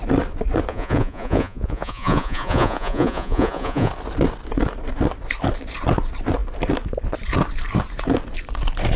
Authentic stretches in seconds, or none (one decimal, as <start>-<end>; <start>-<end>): 0.0-0.7; 3.9-9.0